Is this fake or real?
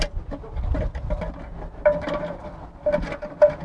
real